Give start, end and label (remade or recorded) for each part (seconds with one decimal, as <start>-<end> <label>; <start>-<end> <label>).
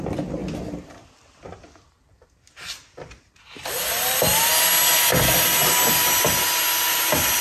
0.0-7.4 recorded